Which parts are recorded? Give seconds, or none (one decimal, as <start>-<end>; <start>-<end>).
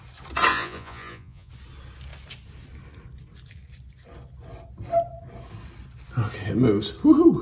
0.0-0.5; 1.5-7.4